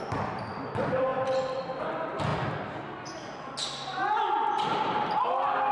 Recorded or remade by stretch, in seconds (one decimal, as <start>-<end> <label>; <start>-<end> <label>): 0.0-5.7 recorded